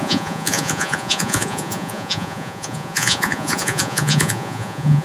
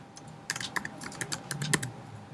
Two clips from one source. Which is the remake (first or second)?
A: first